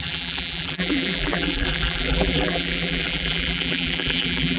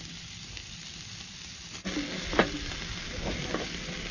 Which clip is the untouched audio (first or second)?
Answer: second